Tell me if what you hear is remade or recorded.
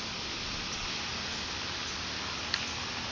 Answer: recorded